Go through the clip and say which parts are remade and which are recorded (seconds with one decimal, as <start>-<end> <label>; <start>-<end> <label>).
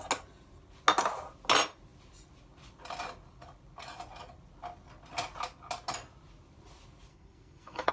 0.0-7.1 recorded; 7.1-7.9 remade